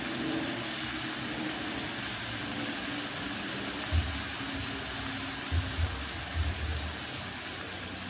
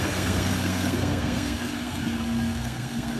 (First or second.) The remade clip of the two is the second